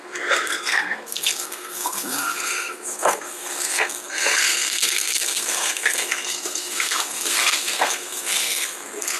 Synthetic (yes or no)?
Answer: yes